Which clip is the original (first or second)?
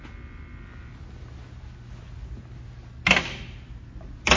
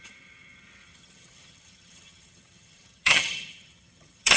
first